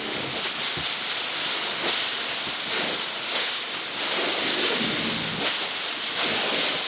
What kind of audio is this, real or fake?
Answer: real